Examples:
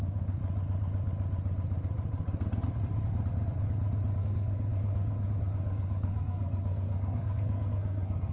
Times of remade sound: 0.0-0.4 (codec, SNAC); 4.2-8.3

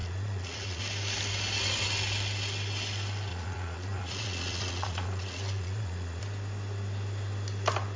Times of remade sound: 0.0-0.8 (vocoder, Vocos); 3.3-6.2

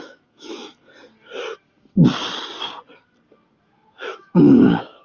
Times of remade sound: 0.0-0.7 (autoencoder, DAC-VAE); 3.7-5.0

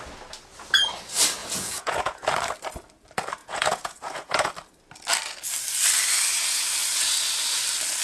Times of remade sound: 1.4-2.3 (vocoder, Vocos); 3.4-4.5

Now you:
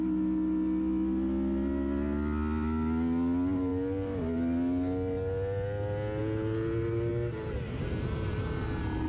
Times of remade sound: none

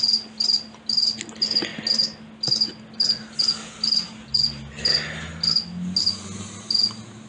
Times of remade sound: none

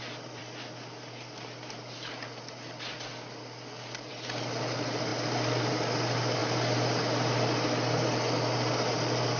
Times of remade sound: 5.1-5.7 (vocoder, BigVGAN v2)